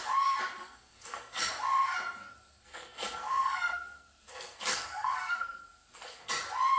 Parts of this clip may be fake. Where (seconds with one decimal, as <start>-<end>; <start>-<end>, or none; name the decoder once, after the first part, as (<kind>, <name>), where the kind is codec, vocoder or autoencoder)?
0.6-1.4 (codec, SNAC); 2.2-6.3